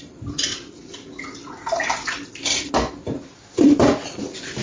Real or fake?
fake